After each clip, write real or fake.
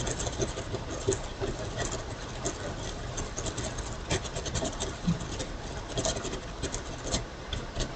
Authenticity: real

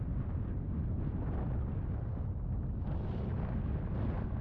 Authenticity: real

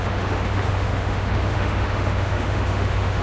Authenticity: fake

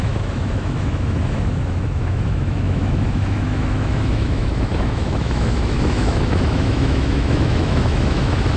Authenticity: fake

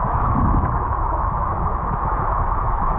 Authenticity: fake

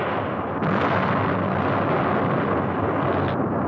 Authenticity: real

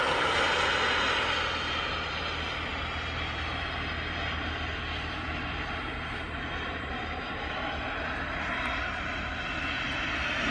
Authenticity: real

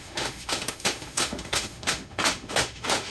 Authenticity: fake